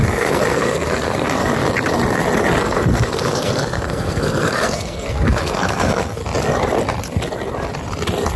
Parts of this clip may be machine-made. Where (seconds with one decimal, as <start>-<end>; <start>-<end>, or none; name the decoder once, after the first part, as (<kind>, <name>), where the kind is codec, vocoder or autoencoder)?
0.0-1.4 (codec, SNAC); 2.6-6.2